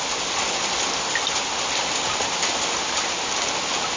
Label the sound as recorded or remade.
recorded